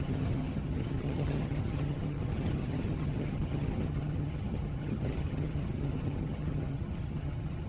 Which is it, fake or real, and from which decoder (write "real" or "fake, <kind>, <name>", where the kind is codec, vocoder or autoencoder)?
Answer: fake, vocoder, HiFi-GAN